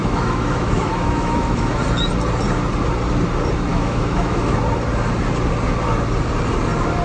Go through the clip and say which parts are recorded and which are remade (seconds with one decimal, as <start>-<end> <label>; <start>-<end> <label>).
0.0-1.8 remade; 1.8-3.7 recorded; 3.7-4.6 remade; 4.6-7.0 recorded